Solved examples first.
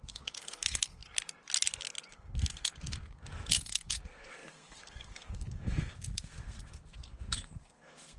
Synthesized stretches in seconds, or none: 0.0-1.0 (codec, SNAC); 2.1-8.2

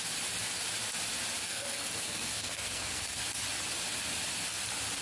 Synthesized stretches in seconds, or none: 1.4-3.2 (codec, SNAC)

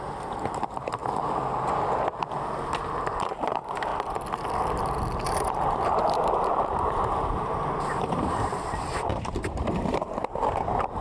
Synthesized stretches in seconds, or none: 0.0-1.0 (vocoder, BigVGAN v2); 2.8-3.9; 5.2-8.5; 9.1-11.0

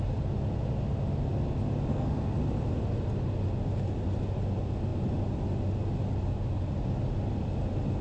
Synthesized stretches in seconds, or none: 1.9-2.4 (codec, SNAC)

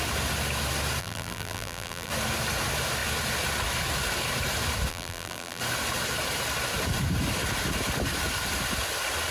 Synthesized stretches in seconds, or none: 1.0-2.1 (vocoder, BigVGAN v2); 4.9-5.6